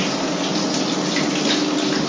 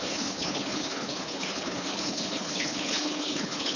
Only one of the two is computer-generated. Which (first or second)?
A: second